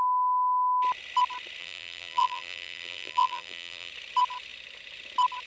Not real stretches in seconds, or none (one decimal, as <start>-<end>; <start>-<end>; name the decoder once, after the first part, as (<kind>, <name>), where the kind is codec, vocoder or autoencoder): 1.6-3.9 (vocoder, BigVGAN v2)